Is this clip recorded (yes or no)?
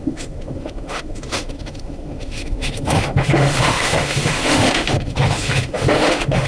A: no